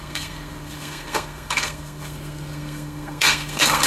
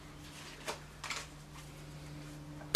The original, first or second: second